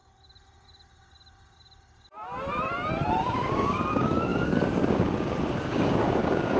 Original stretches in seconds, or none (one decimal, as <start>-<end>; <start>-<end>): 0.0-3.2

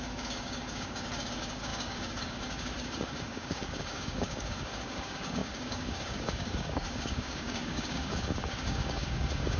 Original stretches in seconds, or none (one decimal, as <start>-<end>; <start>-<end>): none

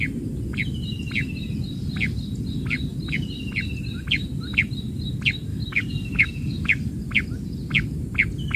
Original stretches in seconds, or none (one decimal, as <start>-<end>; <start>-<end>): 0.0-5.5; 6.9-8.6